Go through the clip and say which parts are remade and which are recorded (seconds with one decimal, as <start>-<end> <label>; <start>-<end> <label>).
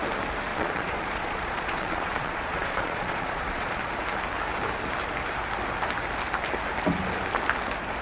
0.0-0.5 recorded; 0.5-3.8 remade; 3.8-8.0 recorded